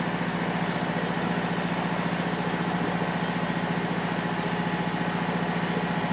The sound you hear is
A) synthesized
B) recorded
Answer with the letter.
B